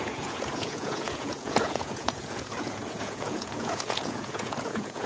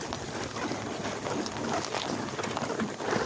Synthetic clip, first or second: first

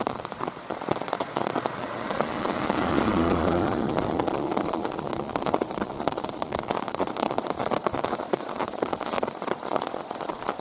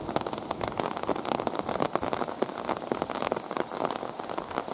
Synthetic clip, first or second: first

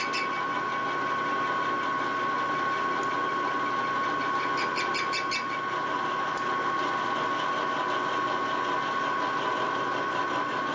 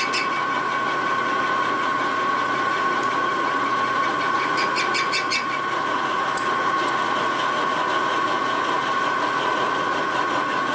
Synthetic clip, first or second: second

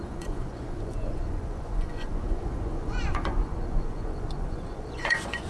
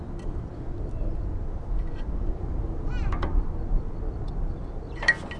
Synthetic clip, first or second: first